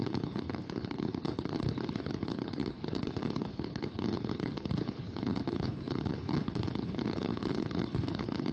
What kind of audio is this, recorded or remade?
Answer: remade